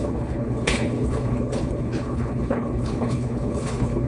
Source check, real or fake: fake